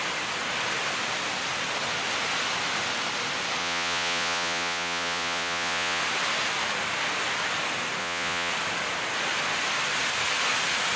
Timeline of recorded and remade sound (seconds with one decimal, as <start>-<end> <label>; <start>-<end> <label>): 0.0-3.6 recorded; 3.6-6.0 remade; 6.0-8.0 recorded; 8.0-8.5 remade; 8.5-11.0 recorded